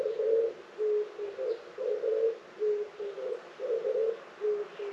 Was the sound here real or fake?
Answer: real